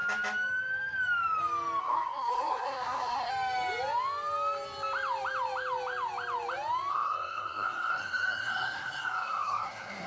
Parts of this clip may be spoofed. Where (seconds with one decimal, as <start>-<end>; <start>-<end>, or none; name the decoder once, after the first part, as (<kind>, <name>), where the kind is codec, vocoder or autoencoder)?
1.8-3.3 (codec, SNAC); 6.9-10.1

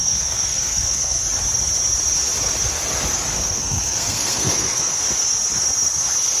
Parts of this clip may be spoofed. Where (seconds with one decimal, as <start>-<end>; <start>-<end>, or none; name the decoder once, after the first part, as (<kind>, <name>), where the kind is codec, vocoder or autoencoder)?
0.0-1.2 (codec, SNAC); 3.3-4.9

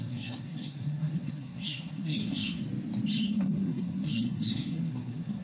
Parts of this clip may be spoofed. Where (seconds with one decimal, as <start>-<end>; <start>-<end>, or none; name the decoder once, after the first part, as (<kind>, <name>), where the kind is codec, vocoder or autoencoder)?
0.0-2.6 (codec, SNAC); 3.2-5.4

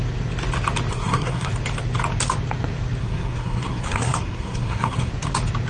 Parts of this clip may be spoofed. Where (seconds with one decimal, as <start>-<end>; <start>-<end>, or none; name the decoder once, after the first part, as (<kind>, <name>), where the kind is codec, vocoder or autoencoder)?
0.9-1.5 (codec, SNAC); 3.0-5.1